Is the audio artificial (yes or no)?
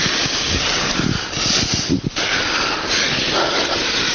no